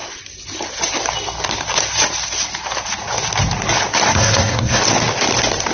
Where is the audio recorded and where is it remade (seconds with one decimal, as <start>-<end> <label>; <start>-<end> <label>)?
0.0-4.1 recorded; 4.1-4.8 remade; 4.8-5.7 recorded